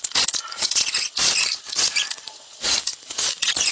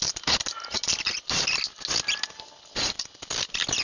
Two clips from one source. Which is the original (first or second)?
second